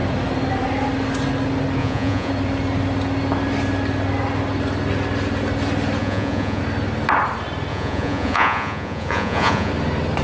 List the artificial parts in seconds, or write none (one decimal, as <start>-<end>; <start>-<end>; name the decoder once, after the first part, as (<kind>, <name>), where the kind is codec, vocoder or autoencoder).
1.8-2.3 (vocoder, Vocos); 6.0-6.6; 7.7-9.7